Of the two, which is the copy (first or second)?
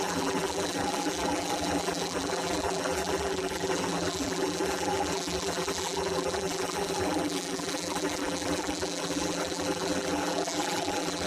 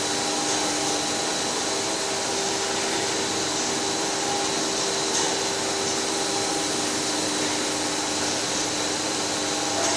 first